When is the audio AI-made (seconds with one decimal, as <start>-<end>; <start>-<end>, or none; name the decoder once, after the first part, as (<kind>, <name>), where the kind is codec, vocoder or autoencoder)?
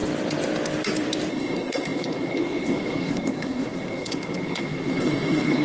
1.3-5.6 (codec, SNAC)